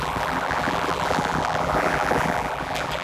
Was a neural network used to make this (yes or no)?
yes